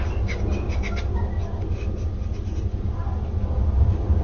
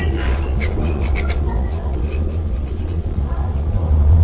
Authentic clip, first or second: first